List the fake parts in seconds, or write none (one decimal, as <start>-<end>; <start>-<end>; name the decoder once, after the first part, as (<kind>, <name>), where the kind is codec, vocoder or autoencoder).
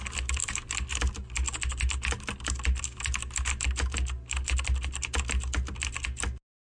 none